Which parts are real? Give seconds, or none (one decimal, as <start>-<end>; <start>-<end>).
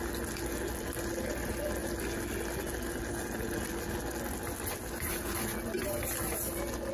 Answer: 0.0-6.9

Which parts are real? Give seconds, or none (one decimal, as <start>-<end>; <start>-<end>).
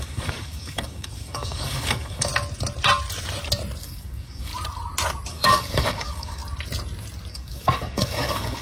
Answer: 2.3-3.8; 4.5-5.3; 6.4-7.3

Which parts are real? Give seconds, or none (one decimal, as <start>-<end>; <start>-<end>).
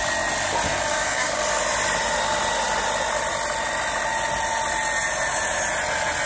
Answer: 0.0-0.9; 1.4-6.3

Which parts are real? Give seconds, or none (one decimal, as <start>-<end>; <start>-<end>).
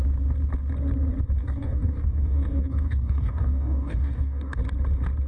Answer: 0.0-1.4; 4.6-5.3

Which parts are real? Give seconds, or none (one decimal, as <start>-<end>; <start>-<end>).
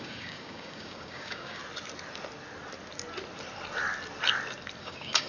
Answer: 1.6-4.8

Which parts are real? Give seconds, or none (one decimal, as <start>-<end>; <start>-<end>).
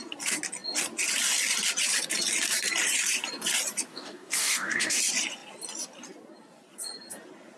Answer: 0.0-3.9; 5.0-7.6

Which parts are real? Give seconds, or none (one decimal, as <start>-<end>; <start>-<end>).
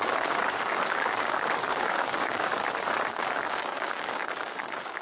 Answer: 2.5-3.1